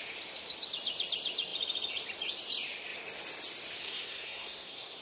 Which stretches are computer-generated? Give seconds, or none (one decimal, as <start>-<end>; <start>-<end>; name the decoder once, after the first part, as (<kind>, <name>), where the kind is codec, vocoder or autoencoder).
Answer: 3.8-5.0 (codec, SNAC)